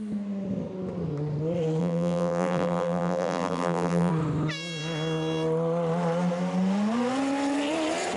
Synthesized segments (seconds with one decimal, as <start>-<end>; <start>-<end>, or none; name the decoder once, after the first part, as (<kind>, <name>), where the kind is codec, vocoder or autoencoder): 1.8-4.1 (vocoder, BigVGAN v2)